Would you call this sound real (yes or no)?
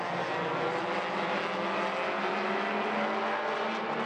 yes